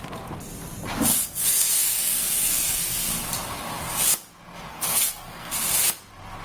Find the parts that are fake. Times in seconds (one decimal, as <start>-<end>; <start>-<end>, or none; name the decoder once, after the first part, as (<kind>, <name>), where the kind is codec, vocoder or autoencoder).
1.1-3.1 (codec, SNAC); 4.7-5.5